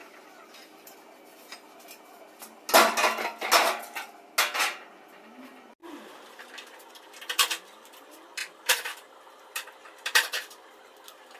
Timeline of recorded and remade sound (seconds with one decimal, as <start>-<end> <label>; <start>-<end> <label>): 0.0-8.4 recorded; 8.4-10.8 remade; 10.8-11.4 recorded

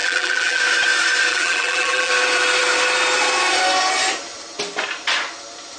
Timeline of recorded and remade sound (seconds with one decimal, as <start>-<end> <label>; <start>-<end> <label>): 0.0-0.6 remade; 0.6-1.3 recorded; 1.3-2.1 remade; 2.1-5.8 recorded

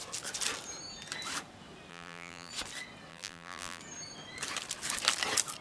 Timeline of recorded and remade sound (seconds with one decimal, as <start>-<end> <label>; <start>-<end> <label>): 0.0-1.9 recorded; 1.9-2.5 remade; 2.5-3.1 recorded; 3.1-3.8 remade; 3.8-5.6 recorded

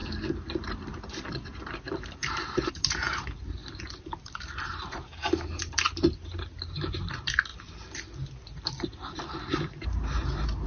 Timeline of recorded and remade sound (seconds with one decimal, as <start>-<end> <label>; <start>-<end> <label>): 0.0-0.5 recorded; 0.5-7.5 remade; 7.5-9.2 recorded; 9.2-10.7 remade

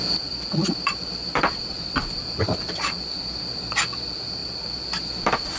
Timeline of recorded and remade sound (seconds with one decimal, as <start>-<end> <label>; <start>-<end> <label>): 0.0-0.6 recorded; 0.6-3.7 remade; 3.7-5.6 recorded